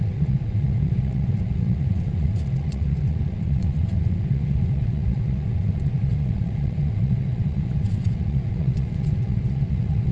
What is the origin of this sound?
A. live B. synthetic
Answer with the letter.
B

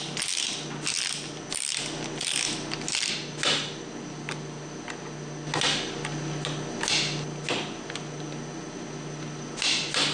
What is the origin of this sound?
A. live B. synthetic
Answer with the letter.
A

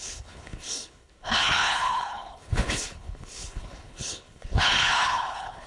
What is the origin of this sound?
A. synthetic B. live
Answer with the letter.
A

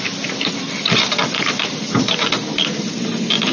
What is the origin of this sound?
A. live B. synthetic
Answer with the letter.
A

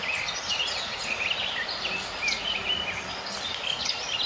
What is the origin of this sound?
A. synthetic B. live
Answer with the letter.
B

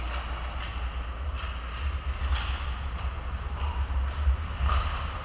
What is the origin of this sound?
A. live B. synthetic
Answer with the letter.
A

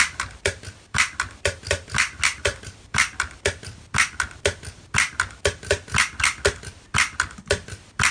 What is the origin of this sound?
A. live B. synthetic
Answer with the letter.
A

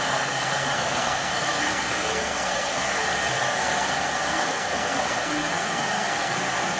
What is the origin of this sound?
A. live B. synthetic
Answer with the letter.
B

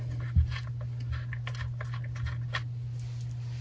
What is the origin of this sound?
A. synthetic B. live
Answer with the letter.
B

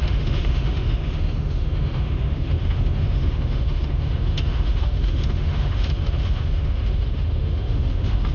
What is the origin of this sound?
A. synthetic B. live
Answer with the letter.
A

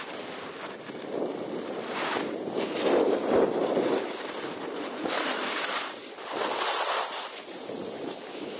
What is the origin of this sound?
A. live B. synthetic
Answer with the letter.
A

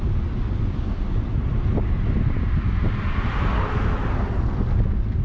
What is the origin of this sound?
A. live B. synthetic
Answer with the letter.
A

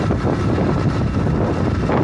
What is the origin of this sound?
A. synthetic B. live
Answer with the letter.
B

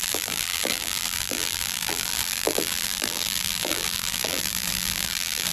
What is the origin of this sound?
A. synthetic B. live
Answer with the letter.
A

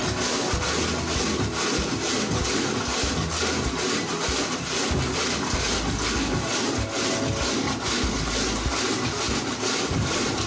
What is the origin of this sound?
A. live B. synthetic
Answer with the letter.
A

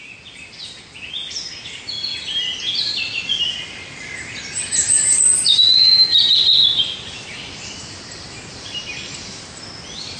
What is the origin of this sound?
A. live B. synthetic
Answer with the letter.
A